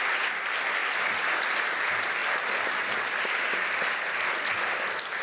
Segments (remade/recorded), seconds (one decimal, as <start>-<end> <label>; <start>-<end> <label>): 0.0-2.2 recorded; 2.2-3.7 remade; 3.7-5.2 recorded